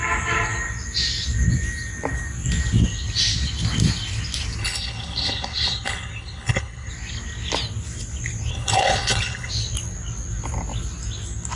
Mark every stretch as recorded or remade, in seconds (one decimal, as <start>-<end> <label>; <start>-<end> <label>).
0.0-4.6 recorded; 4.6-6.9 remade; 6.9-8.5 recorded; 8.5-9.5 remade; 9.5-11.6 recorded